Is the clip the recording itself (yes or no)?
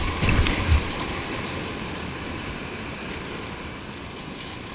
yes